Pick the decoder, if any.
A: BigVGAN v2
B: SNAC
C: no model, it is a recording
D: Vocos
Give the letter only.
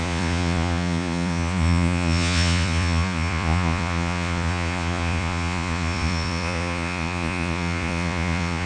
D